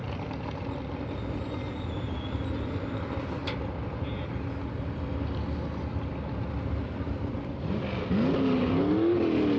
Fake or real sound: real